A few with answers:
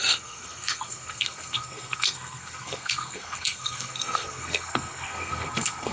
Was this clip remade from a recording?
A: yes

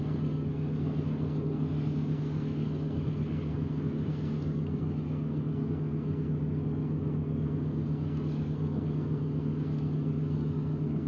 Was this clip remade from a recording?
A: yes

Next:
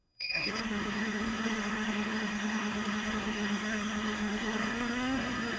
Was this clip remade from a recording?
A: yes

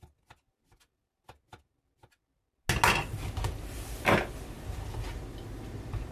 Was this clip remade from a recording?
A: no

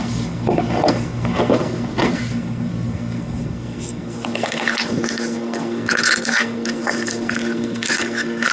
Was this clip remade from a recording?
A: yes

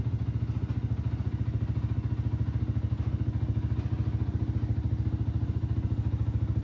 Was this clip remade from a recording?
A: no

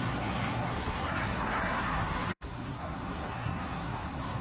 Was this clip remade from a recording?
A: yes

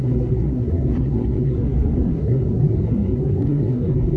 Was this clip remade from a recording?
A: yes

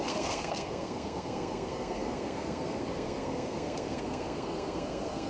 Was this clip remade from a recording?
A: yes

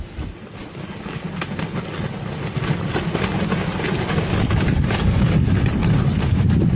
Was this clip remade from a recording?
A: no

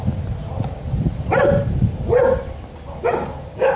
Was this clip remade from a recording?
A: no